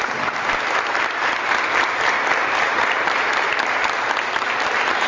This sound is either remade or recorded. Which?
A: remade